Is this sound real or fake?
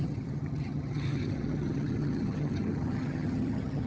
fake